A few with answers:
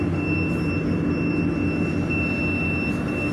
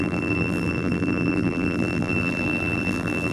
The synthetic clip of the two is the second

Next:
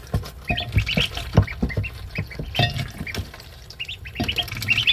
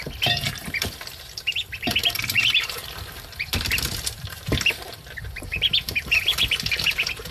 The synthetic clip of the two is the second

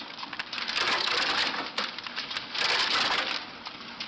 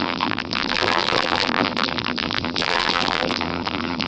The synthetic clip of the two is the second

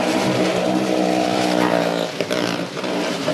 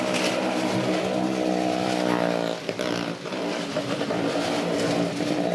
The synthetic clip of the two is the first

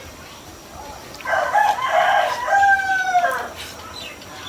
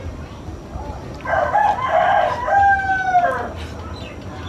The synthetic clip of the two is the first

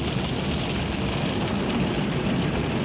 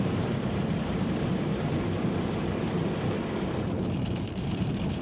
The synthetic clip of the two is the second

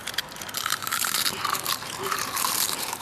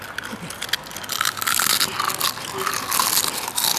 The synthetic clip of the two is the first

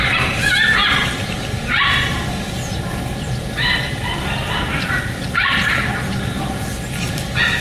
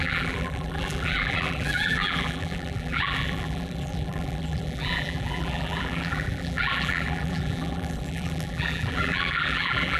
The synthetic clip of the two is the second